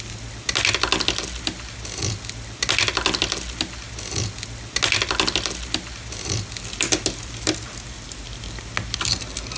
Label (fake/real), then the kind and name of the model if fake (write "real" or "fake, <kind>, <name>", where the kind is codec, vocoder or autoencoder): real